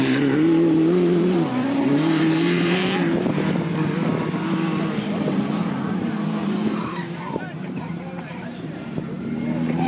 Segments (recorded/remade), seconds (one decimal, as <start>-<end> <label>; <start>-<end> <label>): 0.0-2.8 remade; 2.8-5.1 recorded; 5.1-9.9 remade